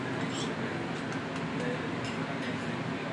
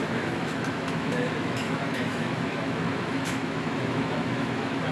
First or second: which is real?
first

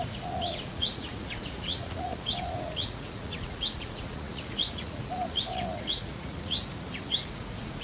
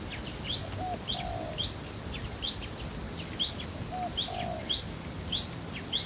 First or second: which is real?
second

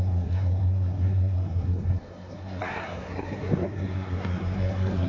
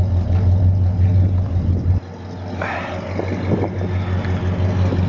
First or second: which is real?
second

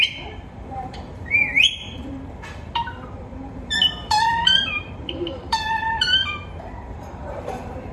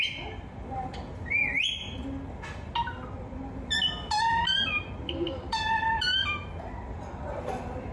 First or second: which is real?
second